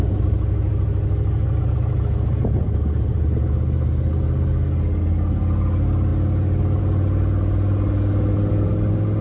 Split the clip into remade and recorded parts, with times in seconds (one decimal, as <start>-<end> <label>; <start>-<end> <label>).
0.0-9.2 recorded